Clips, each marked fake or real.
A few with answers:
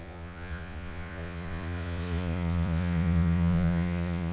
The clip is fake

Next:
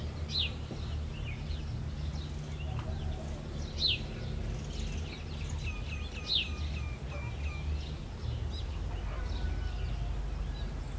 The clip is real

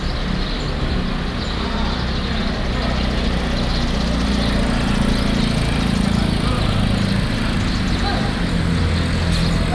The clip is real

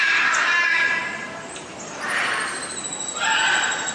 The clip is real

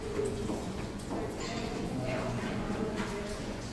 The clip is fake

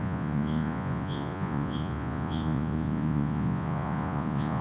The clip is fake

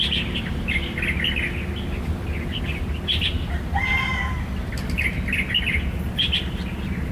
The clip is real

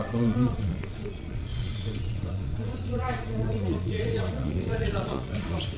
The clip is fake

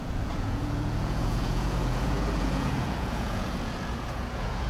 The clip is fake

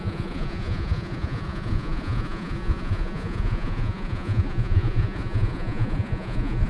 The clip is fake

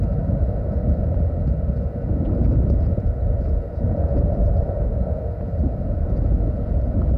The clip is fake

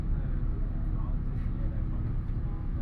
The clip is real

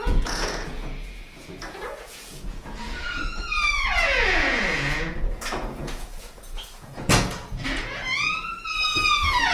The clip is fake